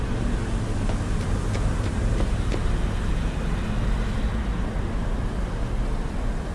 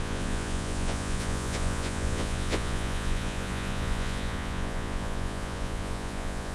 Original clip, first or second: first